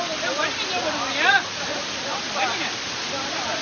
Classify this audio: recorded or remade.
recorded